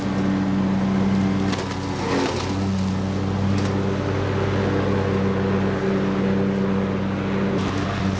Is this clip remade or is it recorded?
recorded